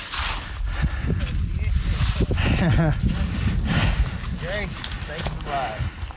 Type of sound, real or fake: real